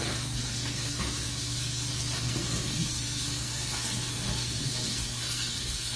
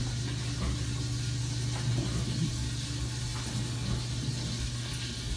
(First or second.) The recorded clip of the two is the second